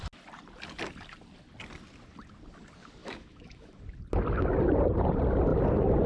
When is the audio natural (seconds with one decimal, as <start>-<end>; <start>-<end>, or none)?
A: 0.0-3.0; 3.8-6.1